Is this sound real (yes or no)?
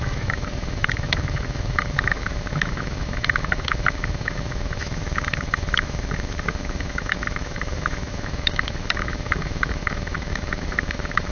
no